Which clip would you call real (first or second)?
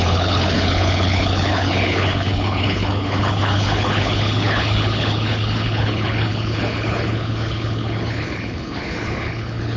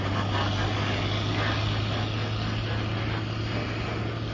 second